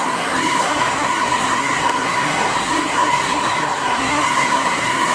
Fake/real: fake